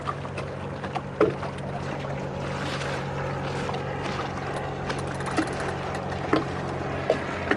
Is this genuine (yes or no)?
yes